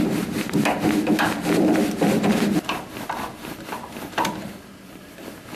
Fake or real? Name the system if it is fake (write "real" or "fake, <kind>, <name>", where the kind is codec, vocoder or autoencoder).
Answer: real